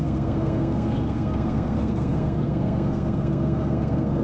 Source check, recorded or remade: remade